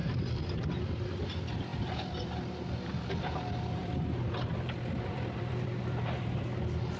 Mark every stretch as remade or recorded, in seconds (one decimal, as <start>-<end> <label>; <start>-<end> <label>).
0.0-3.8 recorded; 3.8-7.0 remade